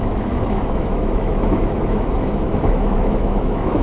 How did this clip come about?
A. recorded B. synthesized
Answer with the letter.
B